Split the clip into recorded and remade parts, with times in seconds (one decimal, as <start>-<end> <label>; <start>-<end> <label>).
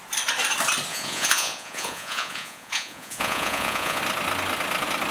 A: 0.0-0.9 recorded; 0.9-4.0 remade; 4.0-5.1 recorded